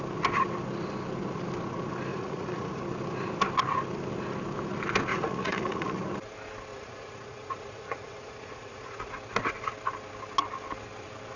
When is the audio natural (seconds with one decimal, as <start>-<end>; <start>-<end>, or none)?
0.0-2.1; 2.8-5.1; 6.0-6.7; 9.1-11.4